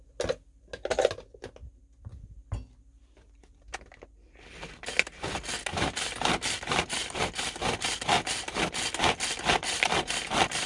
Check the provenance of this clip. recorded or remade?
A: recorded